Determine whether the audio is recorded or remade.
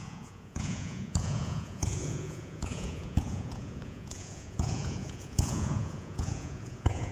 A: remade